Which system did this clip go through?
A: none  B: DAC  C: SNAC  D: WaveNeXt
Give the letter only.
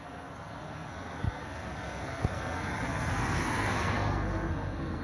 C